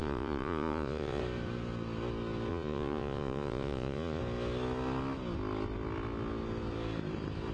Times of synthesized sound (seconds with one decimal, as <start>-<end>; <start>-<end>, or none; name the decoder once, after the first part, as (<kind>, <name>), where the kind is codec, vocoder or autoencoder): 0.0-1.2 (vocoder, Vocos); 2.5-4.2